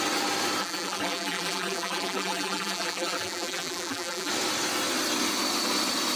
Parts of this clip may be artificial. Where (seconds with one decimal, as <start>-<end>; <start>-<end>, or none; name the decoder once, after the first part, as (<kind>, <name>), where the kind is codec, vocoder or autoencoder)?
0.6-4.3 (vocoder, BigVGAN v2)